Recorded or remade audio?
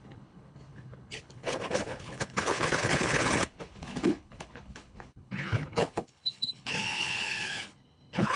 remade